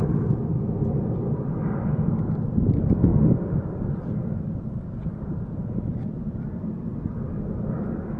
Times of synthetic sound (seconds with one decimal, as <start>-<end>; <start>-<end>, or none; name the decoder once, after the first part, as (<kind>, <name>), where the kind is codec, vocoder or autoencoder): 0.0-3.1 (vocoder, BigVGAN v2); 3.7-8.2